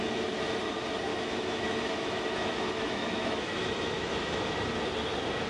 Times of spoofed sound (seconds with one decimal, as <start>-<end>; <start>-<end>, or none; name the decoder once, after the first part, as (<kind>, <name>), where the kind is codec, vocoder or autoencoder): 1.1-4.4 (autoencoder, DAC-VAE)